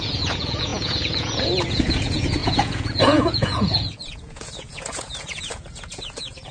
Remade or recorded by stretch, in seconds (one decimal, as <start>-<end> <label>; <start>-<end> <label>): 0.0-6.5 remade